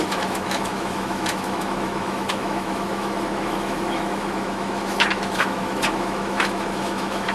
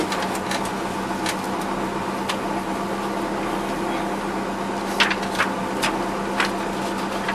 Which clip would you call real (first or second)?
second